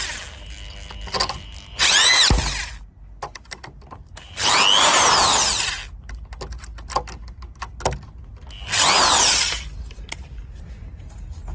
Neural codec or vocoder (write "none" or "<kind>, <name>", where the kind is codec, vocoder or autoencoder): none